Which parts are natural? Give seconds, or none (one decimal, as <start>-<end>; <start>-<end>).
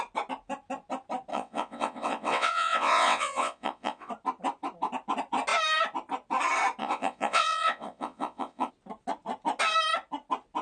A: 0.0-1.3; 4.1-6.8; 8.7-10.6